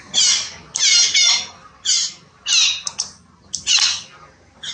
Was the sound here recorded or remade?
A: recorded